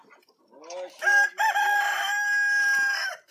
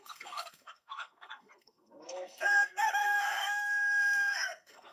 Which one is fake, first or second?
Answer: second